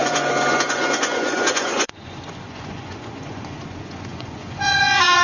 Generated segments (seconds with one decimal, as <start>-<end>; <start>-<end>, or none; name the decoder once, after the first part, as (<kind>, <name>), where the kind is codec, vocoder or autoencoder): 0.0-5.2 (vocoder, Vocos)